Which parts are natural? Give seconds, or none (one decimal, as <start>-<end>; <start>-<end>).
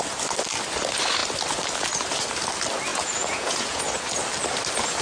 0.0-2.9; 3.8-5.0